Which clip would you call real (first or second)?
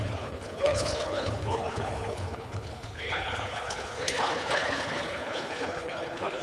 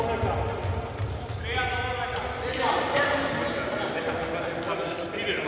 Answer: second